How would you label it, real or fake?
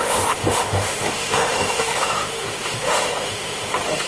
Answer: fake